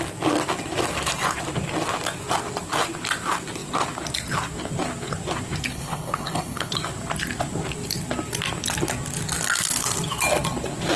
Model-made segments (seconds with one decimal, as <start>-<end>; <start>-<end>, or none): 5.7-6.7